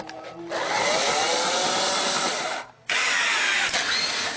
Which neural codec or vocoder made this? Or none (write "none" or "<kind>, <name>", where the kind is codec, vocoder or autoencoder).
none